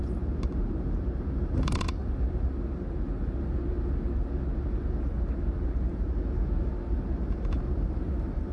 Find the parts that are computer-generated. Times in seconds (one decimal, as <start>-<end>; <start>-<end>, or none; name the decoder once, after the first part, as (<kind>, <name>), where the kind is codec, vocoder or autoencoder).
0.0-2.0 (vocoder, BigVGAN v2); 5.9-8.5